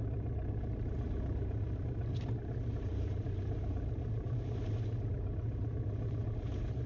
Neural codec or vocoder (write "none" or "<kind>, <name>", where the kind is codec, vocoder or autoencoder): vocoder, BigVGAN v2